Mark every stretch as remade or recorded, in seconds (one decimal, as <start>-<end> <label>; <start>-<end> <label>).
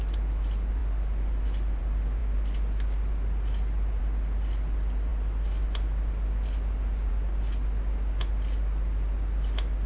0.0-9.9 recorded